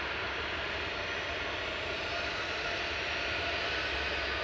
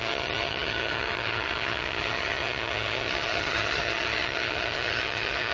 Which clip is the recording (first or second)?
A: first